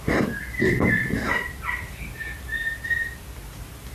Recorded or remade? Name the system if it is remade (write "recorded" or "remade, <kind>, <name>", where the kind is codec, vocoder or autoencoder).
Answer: remade, vocoder, BigVGAN v2